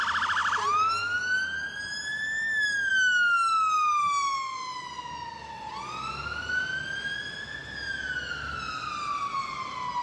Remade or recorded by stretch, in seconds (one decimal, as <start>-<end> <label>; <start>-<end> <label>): 0.0-10.0 recorded